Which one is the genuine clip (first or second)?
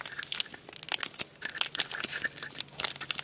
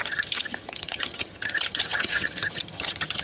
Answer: first